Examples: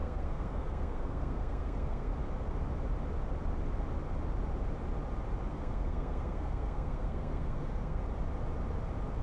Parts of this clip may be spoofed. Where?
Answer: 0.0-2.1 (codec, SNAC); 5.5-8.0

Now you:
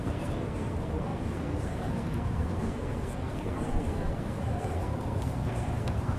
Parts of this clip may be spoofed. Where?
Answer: 0.0-6.2 (codec, SNAC)

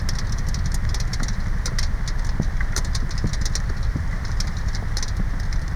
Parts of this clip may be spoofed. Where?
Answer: 1.1-1.8 (vocoder, BigVGAN v2); 3.9-5.0

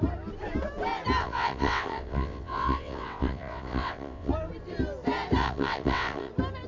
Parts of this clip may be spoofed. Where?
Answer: 1.2-4.3 (vocoder, WaveNeXt); 5.4-6.3

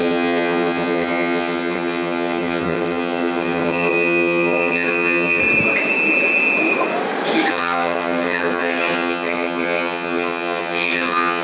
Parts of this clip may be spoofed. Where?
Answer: 0.0-5.4 (vocoder, HiFi-GAN); 7.5-11.4

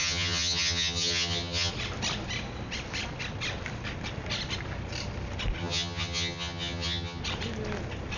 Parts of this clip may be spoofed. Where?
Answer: 0.0-1.7 (vocoder, HiFi-GAN); 5.6-7.2